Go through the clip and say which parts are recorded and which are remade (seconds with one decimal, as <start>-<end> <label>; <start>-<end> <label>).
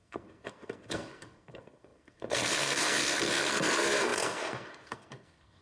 0.0-5.6 remade